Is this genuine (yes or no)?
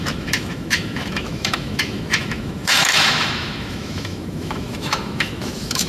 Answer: no